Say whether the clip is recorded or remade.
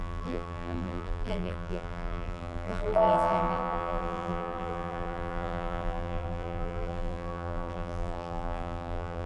remade